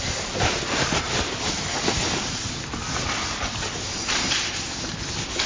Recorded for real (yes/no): yes